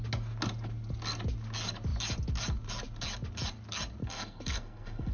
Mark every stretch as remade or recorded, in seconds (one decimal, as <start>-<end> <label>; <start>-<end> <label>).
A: 0.0-4.0 recorded; 4.0-5.1 remade